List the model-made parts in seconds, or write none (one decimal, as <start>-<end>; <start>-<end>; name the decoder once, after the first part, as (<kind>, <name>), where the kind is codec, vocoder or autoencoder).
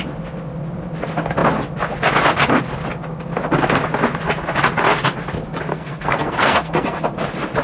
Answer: 5.7-7.0 (codec, SNAC)